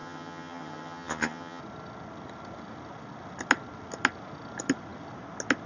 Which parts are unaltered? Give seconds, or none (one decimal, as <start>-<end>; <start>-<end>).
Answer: 1.6-5.7